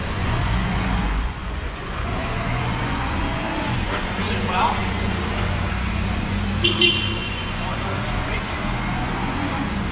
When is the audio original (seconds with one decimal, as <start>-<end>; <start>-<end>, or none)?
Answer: none